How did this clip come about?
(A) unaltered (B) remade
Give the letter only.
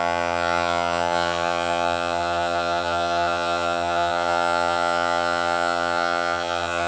B